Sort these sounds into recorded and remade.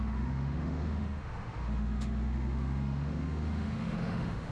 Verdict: remade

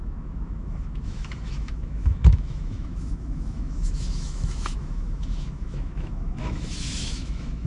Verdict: remade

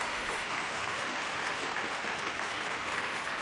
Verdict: remade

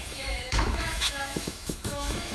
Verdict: remade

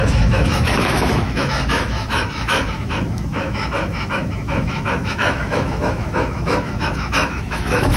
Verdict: remade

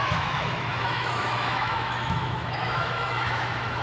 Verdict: remade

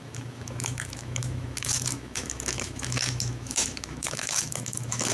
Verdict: remade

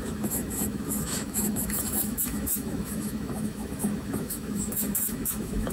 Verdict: remade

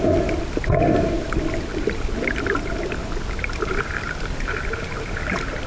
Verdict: recorded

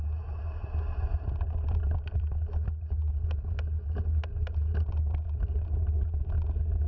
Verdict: recorded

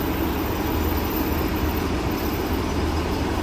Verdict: recorded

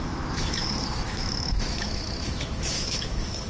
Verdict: remade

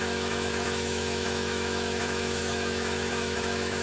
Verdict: remade